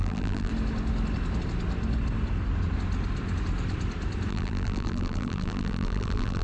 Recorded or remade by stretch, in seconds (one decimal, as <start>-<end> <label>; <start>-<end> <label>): 0.0-0.5 remade; 0.5-4.3 recorded; 4.3-6.4 remade

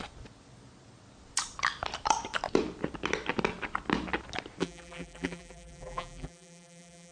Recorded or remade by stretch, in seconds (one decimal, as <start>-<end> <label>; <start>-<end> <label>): 0.0-4.6 recorded; 4.6-7.1 remade

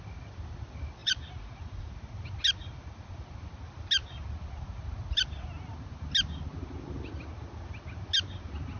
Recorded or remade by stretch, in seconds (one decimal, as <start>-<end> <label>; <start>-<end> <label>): 0.0-1.0 recorded; 1.0-1.9 remade; 1.9-8.8 recorded

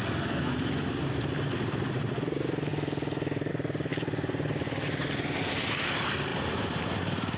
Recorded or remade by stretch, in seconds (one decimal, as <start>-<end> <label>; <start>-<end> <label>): 0.0-1.0 recorded; 1.0-2.7 remade; 2.7-3.5 recorded; 3.5-3.9 remade; 3.9-5.8 recorded; 5.8-7.4 remade

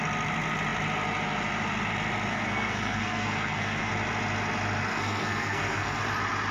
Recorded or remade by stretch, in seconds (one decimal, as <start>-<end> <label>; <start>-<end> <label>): 0.0-2.3 recorded; 2.3-3.9 remade; 3.9-4.9 recorded; 4.9-6.0 remade; 6.0-6.5 recorded